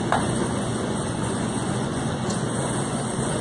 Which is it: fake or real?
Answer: fake